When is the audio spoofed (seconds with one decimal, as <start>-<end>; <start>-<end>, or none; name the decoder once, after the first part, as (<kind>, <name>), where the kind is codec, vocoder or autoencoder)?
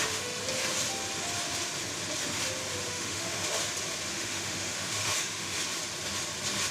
0.0-0.4 (autoencoder, DAC-VAE); 2.9-3.6; 4.1-5.6